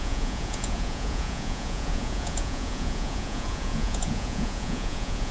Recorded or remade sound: remade